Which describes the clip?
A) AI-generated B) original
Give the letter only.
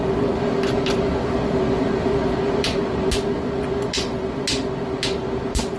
B